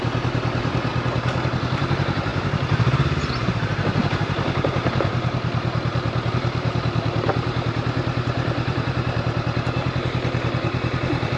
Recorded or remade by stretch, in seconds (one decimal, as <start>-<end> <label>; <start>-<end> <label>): 0.0-0.9 remade; 0.9-1.5 recorded; 1.5-11.4 remade